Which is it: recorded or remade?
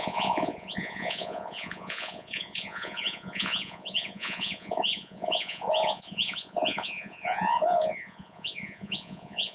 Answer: remade